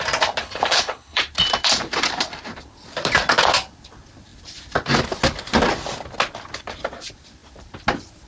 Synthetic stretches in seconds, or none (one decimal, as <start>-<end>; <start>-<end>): 0.4-1.2

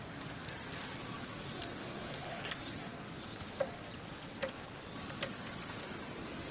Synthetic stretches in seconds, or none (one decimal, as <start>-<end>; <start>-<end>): 1.8-2.5

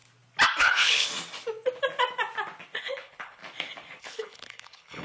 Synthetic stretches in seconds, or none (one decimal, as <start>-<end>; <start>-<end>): 0.6-1.1; 2.8-3.4; 4.0-5.0

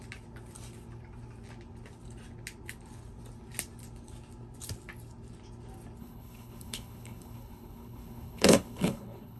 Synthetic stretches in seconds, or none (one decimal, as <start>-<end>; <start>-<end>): 6.0-9.4

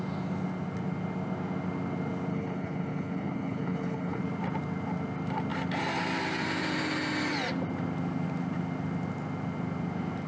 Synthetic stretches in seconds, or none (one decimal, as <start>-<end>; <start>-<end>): 2.3-4.2

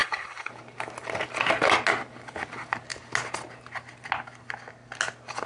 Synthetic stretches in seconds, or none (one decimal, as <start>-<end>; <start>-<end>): 0.0-0.5